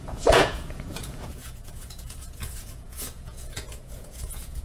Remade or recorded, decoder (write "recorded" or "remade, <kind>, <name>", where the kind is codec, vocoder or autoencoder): remade, vocoder, Vocos